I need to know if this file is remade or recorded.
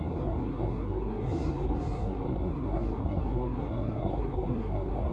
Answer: remade